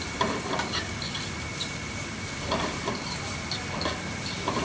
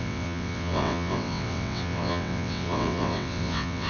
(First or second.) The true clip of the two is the first